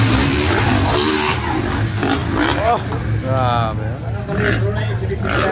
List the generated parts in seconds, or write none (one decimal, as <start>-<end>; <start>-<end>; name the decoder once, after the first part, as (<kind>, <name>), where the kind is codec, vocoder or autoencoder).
none